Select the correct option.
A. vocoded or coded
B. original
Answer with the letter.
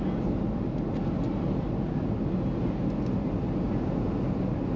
B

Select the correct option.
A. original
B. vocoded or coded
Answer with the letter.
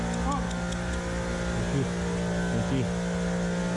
A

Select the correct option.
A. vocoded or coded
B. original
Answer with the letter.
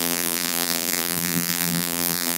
A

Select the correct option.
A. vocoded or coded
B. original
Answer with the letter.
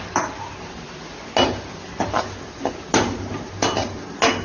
B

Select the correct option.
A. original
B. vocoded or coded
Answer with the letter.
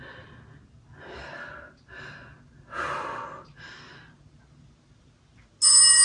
A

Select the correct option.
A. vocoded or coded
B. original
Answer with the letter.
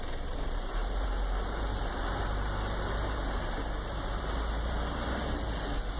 A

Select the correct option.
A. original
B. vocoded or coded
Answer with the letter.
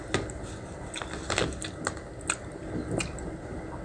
A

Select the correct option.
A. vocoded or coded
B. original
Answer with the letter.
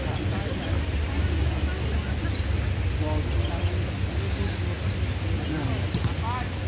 B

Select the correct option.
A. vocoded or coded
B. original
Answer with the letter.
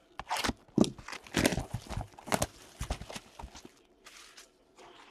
B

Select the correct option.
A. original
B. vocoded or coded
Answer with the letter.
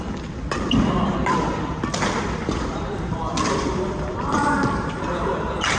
B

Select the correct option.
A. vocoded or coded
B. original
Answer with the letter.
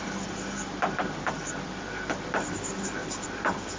B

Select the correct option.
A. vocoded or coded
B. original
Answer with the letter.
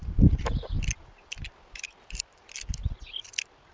B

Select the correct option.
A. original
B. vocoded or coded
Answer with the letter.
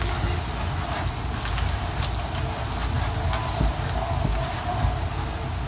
A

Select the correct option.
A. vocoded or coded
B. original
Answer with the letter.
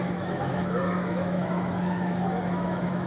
A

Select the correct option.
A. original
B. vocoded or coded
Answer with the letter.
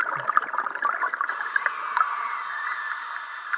A